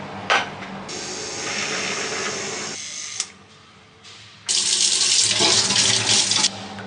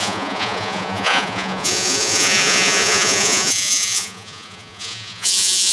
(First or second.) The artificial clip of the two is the second